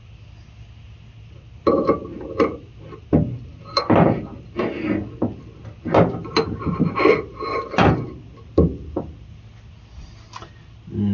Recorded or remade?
recorded